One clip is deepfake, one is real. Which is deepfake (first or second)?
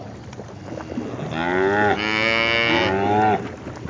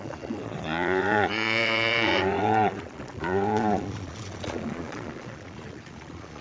second